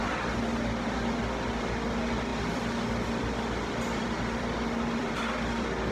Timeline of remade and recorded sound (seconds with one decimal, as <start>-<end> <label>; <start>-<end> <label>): 0.0-2.3 recorded; 2.3-5.9 remade